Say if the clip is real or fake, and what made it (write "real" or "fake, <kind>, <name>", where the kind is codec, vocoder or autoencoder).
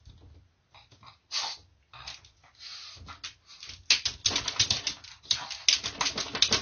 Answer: real